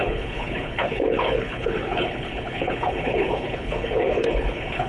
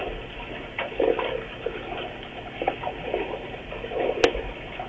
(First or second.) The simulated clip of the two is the first